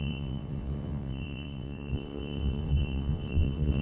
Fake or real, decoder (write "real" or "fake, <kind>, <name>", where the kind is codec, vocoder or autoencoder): fake, vocoder, WaveNeXt